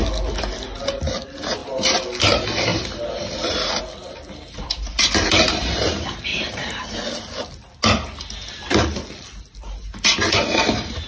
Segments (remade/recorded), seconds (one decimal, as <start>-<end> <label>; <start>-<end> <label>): 0.0-6.3 recorded; 6.3-7.1 remade; 7.1-9.9 recorded; 9.9-10.4 remade; 10.4-11.1 recorded